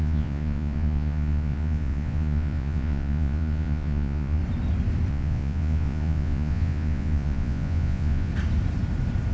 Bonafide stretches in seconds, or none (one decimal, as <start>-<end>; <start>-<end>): 4.4-5.1; 8.3-9.3